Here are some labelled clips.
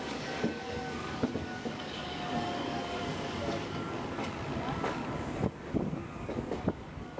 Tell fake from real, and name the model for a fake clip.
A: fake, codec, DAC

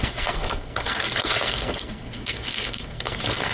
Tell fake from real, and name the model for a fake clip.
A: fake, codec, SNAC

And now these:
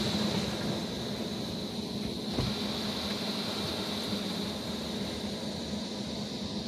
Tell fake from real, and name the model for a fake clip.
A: real